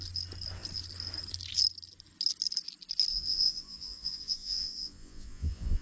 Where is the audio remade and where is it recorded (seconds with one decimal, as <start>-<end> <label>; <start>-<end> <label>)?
0.0-3.1 recorded; 3.1-5.8 remade